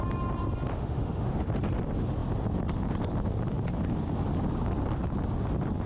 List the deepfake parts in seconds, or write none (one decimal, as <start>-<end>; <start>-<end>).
0.7-1.5